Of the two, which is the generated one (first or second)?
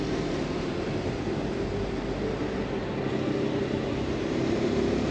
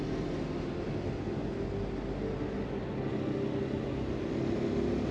first